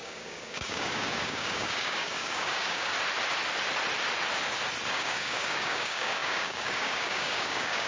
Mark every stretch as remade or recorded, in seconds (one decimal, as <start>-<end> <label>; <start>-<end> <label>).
0.0-2.9 remade; 2.9-4.9 recorded; 4.9-7.9 remade